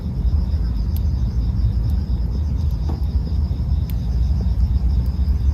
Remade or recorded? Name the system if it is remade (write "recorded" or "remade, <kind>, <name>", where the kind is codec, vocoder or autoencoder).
recorded